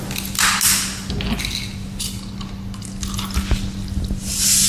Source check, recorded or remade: recorded